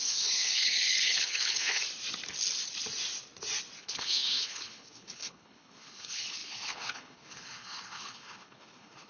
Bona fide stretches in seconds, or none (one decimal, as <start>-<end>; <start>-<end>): 1.8-3.8